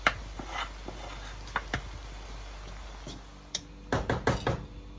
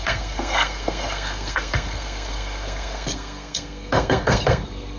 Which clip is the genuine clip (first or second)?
first